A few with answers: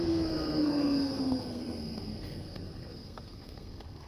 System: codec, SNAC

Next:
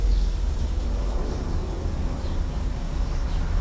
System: codec, DAC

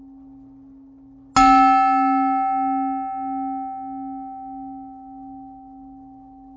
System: none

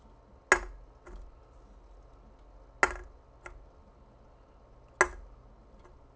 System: none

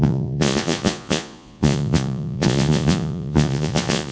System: vocoder, Vocos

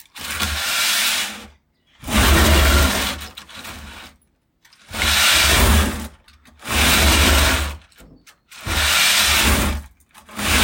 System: none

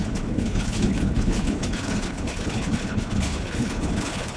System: codec, HILCodec